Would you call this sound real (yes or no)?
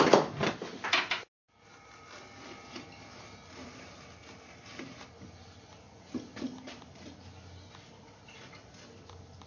yes